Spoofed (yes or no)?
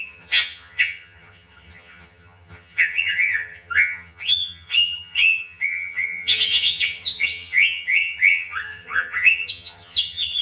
yes